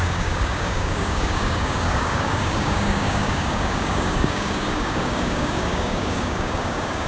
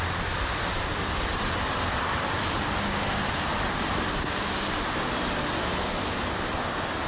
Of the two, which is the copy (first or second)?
first